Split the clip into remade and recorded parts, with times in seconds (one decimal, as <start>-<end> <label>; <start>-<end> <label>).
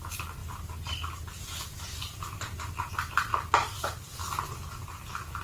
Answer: 0.0-5.4 recorded